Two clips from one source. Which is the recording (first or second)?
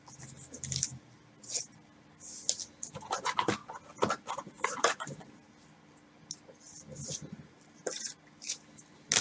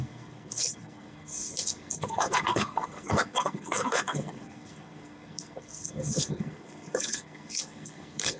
first